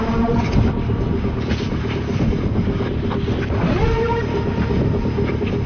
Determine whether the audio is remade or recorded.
recorded